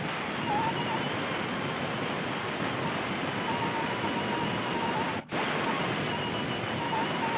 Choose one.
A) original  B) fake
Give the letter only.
A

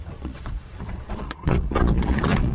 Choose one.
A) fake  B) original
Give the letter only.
A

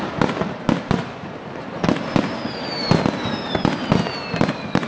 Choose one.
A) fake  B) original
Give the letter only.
B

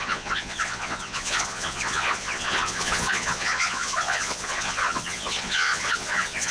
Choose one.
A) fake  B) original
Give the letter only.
A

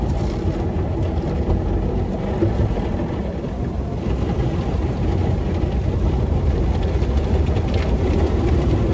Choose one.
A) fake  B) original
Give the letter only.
B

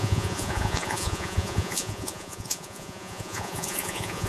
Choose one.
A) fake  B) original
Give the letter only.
A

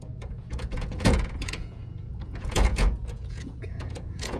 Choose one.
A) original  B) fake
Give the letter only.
B